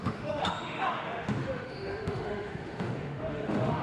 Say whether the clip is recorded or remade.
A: remade